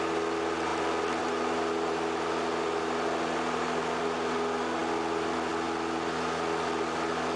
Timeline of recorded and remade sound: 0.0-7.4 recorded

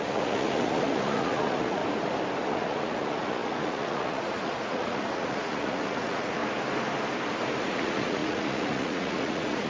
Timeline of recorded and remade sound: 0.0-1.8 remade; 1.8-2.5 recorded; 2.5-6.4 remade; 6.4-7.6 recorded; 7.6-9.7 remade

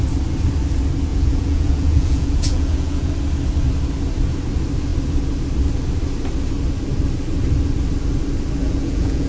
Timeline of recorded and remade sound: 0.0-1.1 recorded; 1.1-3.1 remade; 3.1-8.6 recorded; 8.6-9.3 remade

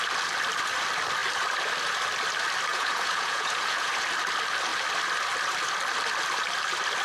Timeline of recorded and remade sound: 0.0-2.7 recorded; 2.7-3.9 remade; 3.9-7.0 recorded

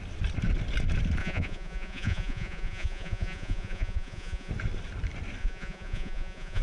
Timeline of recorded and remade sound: 0.0-1.2 recorded; 1.2-4.5 remade; 4.5-5.4 recorded; 5.4-6.6 remade

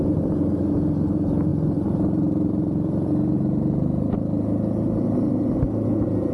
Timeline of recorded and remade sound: 0.0-6.3 recorded

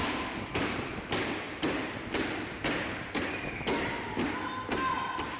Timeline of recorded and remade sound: 0.0-5.4 recorded

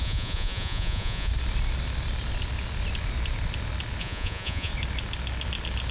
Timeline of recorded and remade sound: 0.0-1.3 remade; 1.3-4.0 recorded; 4.0-4.7 remade; 4.7-5.9 recorded